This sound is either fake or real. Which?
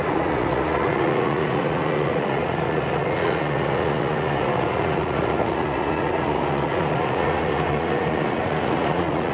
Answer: fake